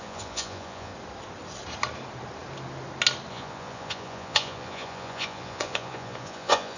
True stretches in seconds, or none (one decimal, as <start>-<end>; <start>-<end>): 0.9-3.3